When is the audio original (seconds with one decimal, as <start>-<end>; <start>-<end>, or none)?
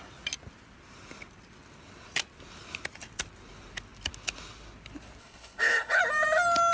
0.0-5.2; 6.0-6.7